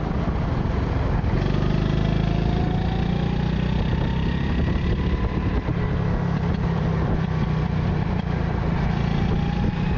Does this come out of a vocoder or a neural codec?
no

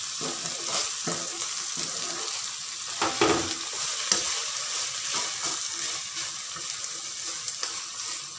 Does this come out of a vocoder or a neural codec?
no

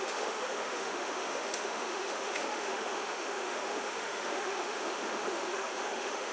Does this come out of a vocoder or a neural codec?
yes